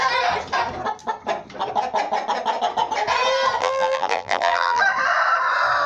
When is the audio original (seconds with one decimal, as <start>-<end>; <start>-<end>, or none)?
0.0-3.6; 4.8-5.9